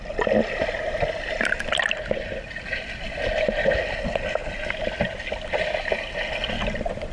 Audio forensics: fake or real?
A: real